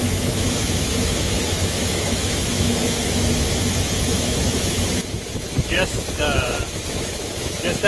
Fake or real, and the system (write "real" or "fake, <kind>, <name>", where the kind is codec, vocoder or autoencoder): fake, autoencoder, DAC-VAE